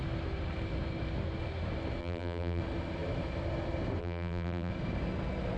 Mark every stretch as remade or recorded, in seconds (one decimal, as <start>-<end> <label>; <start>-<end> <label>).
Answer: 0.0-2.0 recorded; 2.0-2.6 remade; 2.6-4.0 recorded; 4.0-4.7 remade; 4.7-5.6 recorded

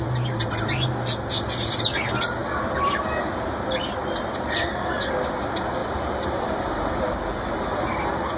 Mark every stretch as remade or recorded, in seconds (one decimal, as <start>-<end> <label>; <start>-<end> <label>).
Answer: 0.0-5.8 recorded; 5.8-7.1 remade; 7.1-8.4 recorded

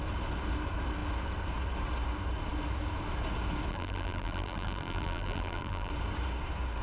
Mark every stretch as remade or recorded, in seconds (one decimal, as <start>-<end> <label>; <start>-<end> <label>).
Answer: 0.0-3.7 recorded; 3.7-5.9 remade; 5.9-6.8 recorded

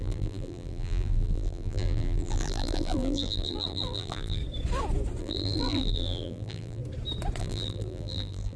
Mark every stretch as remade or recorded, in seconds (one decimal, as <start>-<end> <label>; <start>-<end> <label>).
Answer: 0.0-4.4 remade; 4.4-5.2 recorded; 5.2-6.8 remade; 6.8-7.4 recorded; 7.4-8.6 remade